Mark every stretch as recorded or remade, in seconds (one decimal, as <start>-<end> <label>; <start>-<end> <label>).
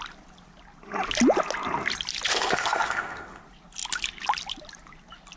0.0-2.3 recorded; 2.3-3.4 remade; 3.4-5.4 recorded